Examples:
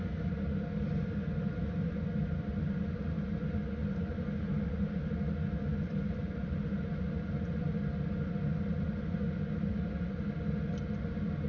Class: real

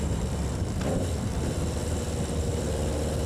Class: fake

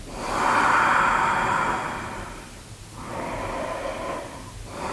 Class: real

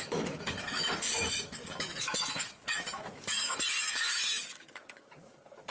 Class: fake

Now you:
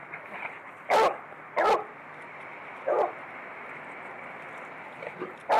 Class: real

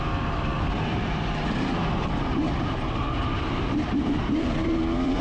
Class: fake